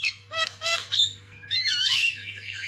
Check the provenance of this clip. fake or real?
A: fake